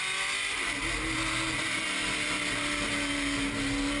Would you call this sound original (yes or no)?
yes